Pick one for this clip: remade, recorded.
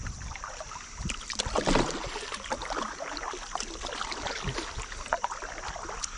recorded